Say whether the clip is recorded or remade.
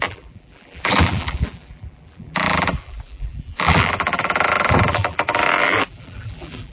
remade